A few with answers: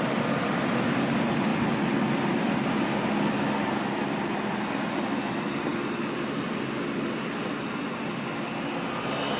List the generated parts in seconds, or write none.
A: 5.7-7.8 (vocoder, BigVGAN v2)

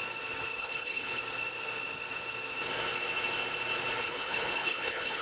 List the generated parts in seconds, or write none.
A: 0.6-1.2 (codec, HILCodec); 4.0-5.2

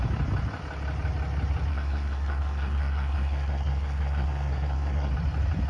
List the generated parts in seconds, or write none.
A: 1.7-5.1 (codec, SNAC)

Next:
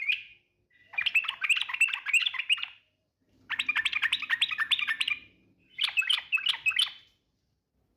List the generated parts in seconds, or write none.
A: 2.2-6.2 (vocoder, BigVGAN v2)

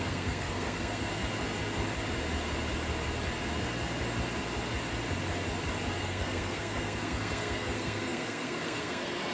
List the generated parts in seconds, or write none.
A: 0.0-1.1 (codec, SNAC); 6.0-9.3

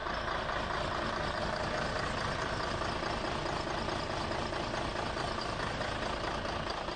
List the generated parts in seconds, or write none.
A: none